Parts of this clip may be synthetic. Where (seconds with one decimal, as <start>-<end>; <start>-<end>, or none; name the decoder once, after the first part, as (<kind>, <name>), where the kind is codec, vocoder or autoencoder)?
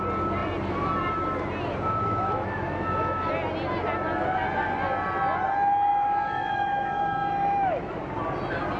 2.0-3.3 (autoencoder, DAC-VAE); 5.9-8.0